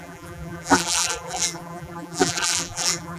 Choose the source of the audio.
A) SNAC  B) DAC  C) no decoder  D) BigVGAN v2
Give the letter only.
D